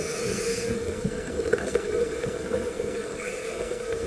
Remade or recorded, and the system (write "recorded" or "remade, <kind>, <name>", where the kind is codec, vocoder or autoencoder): remade, codec, SNAC